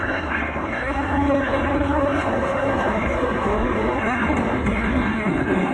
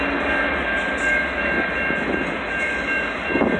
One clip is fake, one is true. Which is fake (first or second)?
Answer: first